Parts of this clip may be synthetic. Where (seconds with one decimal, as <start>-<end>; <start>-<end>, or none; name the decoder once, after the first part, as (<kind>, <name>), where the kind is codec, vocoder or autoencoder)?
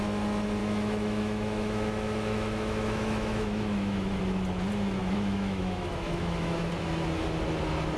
0.6-4.2 (autoencoder, DAC-VAE); 5.0-6.7